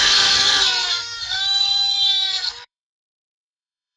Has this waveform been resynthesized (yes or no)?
yes